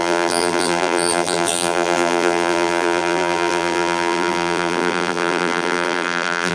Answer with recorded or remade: remade